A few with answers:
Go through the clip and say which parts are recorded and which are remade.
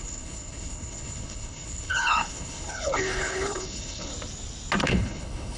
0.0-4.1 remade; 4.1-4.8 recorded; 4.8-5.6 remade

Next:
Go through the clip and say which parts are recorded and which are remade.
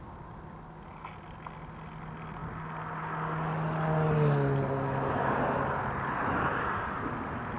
0.0-7.6 recorded